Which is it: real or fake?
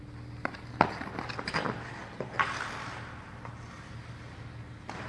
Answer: real